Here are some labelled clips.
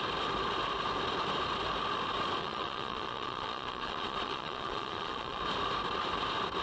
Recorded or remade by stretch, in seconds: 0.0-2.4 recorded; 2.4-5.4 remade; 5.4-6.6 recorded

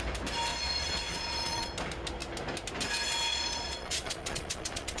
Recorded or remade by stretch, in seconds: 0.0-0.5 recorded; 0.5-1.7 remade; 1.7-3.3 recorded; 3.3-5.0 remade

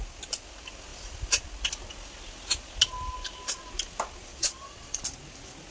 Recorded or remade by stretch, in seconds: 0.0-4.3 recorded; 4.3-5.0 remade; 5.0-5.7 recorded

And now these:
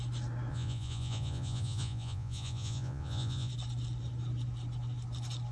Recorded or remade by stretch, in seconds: 0.0-0.5 recorded; 0.5-3.5 remade; 3.5-5.5 recorded

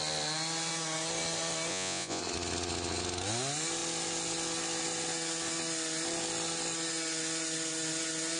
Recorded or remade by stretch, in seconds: 0.0-1.7 recorded; 1.7-2.2 remade; 2.2-8.4 recorded